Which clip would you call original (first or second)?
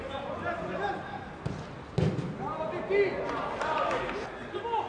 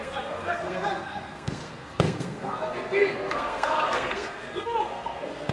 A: first